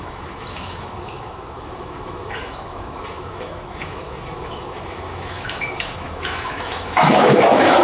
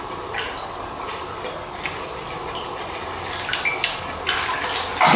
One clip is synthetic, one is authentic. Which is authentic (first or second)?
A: second